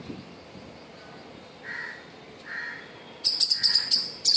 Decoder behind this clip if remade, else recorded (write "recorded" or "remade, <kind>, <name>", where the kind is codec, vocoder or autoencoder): recorded